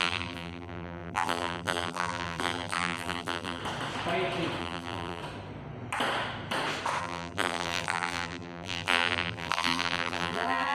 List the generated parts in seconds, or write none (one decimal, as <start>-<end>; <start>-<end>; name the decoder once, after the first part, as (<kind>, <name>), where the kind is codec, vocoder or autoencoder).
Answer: 0.0-3.6 (vocoder, BigVGAN v2); 4.6-5.2; 7.0-10.7